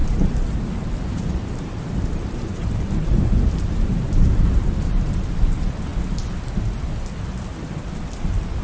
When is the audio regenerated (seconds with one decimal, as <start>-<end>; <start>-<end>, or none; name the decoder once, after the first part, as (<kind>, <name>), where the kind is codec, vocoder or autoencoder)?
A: 0.0-5.1 (vocoder, BigVGAN v2)